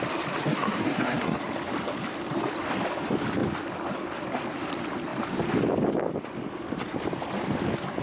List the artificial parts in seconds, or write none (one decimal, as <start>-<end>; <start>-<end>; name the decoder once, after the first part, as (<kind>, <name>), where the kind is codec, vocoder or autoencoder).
0.4-1.4 (codec, SNAC)